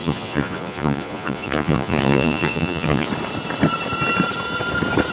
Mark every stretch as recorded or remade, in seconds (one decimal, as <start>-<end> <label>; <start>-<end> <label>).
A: 0.0-3.1 remade; 3.1-5.1 recorded